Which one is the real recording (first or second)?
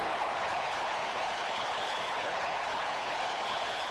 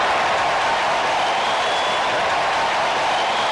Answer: second